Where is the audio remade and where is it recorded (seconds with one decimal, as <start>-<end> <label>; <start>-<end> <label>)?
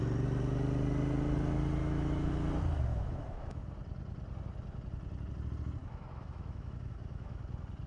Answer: 0.0-1.8 recorded; 1.8-2.3 remade; 2.3-2.9 recorded; 2.9-3.6 remade; 3.6-5.8 recorded; 5.8-7.4 remade; 7.4-7.9 recorded